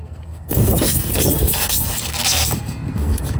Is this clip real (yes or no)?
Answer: no